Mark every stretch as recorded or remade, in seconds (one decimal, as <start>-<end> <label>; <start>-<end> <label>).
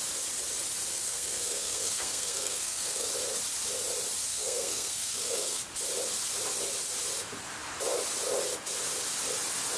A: 0.0-0.9 recorded; 0.9-3.1 remade; 3.1-4.3 recorded; 4.3-5.6 remade; 5.6-9.8 recorded